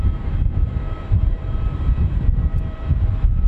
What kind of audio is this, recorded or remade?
remade